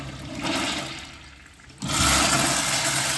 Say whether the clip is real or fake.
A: real